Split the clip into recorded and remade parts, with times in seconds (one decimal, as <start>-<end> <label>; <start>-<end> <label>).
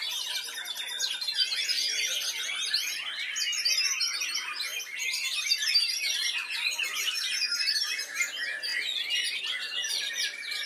0.0-10.7 recorded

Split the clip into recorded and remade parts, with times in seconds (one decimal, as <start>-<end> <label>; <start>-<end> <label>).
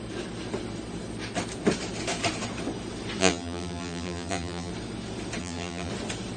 0.0-3.2 recorded; 3.2-4.7 remade; 4.7-5.4 recorded; 5.4-5.9 remade; 5.9-6.4 recorded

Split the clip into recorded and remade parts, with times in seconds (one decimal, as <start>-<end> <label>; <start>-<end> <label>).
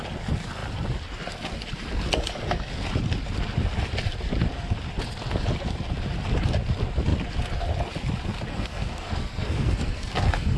0.0-8.5 recorded; 8.5-10.6 remade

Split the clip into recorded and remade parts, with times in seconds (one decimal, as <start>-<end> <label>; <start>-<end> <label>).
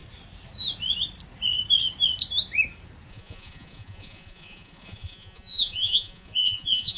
0.0-3.1 recorded; 3.1-7.0 remade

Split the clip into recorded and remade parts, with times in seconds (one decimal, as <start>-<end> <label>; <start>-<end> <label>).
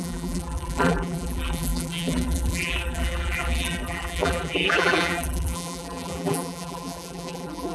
0.0-7.7 remade